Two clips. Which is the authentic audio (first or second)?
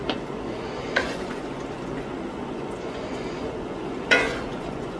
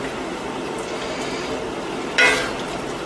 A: second